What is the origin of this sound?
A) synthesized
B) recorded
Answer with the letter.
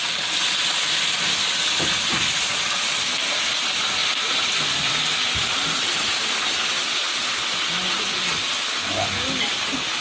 B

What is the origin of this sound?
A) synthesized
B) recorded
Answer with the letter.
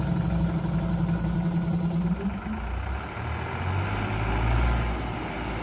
B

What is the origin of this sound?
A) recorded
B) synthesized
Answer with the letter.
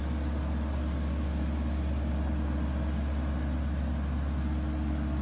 A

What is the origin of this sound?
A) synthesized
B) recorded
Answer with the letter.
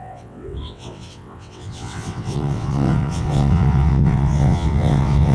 A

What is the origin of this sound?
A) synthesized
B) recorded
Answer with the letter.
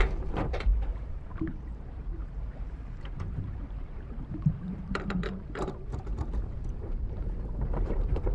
A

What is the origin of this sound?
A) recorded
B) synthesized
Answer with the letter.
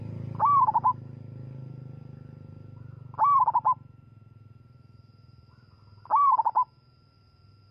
A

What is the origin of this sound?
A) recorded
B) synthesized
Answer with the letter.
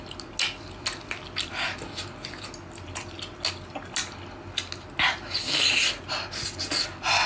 A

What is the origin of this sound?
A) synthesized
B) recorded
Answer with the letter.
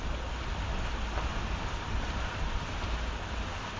B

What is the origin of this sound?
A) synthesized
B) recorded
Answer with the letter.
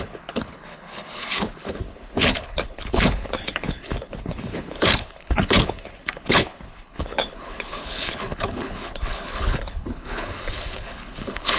A